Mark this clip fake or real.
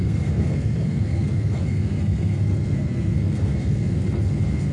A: fake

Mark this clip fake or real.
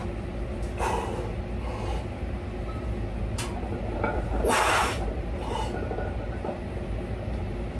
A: real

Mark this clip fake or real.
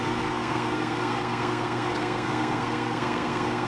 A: fake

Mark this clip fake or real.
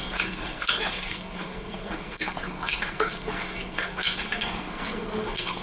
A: fake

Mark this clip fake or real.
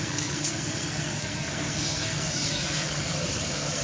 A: fake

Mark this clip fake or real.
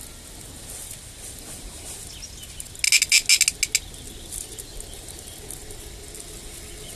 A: real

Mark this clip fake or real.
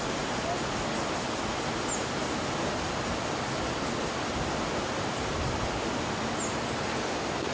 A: real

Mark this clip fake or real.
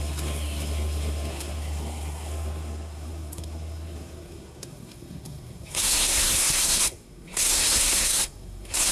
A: fake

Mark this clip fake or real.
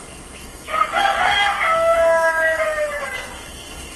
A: fake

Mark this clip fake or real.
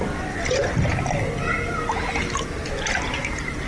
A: real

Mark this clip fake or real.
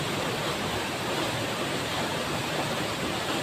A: real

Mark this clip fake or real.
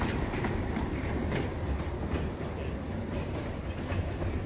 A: real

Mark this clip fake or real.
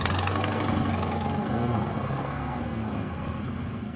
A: fake